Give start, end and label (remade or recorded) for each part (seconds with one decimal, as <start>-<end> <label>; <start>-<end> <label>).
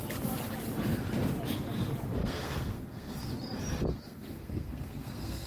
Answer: 0.0-2.2 recorded; 2.2-3.3 remade; 3.3-3.9 recorded; 3.9-5.5 remade